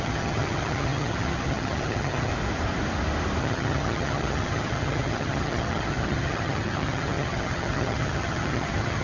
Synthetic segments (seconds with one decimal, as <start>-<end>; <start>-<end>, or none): 0.0-2.3; 3.4-9.0